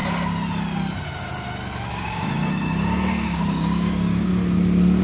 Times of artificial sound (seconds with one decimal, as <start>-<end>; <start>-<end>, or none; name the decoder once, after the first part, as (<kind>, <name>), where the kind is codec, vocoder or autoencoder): 1.9-4.3 (codec, DAC)